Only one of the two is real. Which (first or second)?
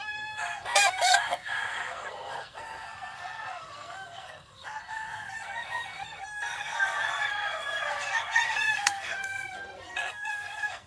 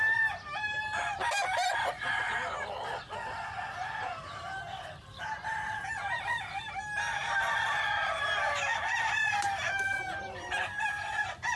second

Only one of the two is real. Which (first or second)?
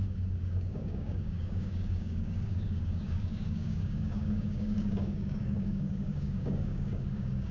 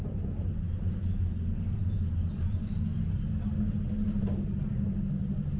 second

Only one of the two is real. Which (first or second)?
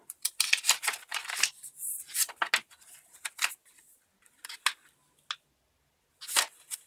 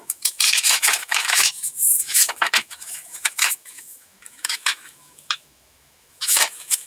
first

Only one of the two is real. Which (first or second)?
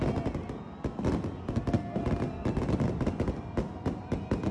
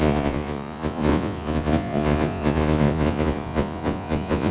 first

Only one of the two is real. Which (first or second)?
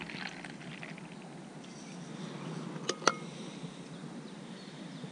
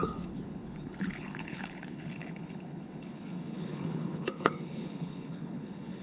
first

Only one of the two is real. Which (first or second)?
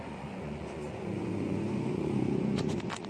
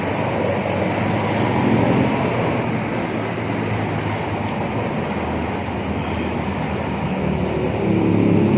second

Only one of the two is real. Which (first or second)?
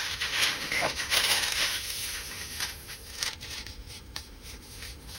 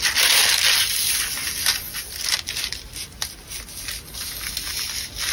second